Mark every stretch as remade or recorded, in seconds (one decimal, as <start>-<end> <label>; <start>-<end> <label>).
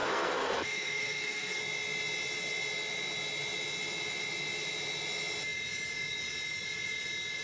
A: 0.0-1.6 remade; 1.6-7.4 recorded